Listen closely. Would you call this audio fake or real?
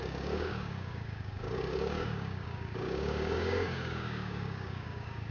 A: fake